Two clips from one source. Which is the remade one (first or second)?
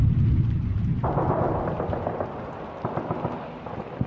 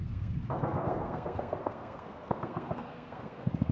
second